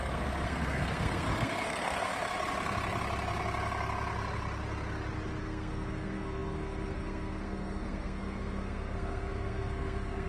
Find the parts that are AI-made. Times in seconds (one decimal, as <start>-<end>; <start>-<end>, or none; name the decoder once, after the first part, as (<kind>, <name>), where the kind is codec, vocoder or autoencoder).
0.0-2.1 (codec, SNAC); 5.4-10.3